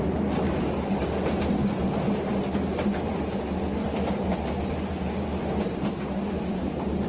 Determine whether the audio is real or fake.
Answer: real